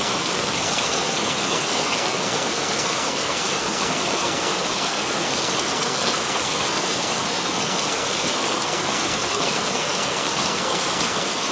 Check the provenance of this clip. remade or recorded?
remade